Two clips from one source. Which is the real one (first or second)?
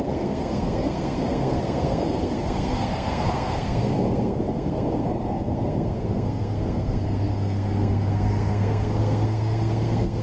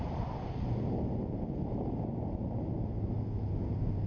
second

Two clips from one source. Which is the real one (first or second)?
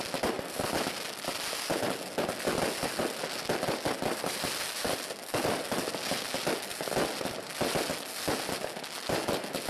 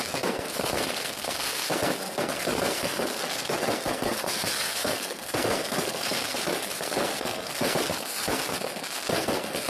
first